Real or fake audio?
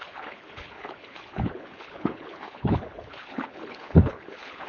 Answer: fake